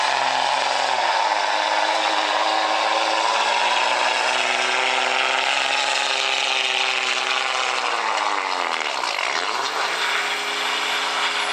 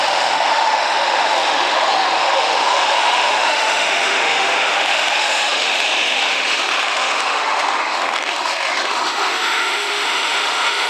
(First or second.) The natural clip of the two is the first